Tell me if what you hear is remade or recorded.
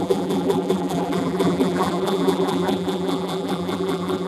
remade